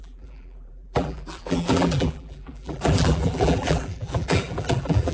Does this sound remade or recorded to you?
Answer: remade